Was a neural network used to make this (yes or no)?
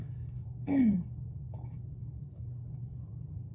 yes